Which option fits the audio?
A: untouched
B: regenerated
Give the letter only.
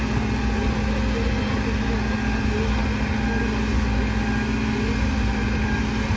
A